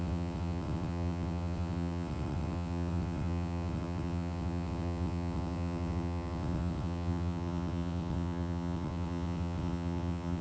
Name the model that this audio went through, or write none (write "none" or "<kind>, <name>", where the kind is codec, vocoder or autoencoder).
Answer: vocoder, WaveNeXt